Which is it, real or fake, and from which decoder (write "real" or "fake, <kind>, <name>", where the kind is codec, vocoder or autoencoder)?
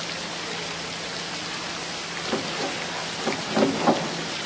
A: real